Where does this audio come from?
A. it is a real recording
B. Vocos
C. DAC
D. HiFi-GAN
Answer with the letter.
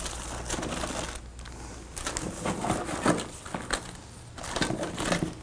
A